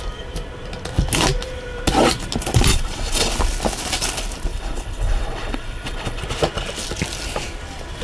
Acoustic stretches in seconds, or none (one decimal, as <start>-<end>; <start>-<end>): 0.0-2.7; 3.3-4.5; 6.2-8.0